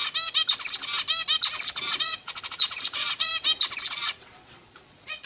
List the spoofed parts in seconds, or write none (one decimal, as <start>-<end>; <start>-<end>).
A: 2.0-3.3; 3.9-5.3